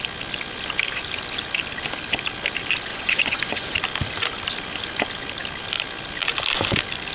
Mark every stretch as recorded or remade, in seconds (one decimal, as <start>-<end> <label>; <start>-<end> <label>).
0.0-2.9 recorded; 2.9-3.8 remade; 3.8-7.1 recorded